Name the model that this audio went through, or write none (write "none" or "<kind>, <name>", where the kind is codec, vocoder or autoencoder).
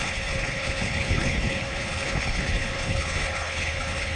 codec, HILCodec